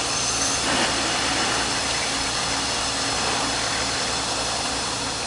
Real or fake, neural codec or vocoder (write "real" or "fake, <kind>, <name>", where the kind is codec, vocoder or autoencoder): real